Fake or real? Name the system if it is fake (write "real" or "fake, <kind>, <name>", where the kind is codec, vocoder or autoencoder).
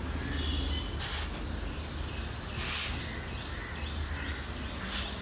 real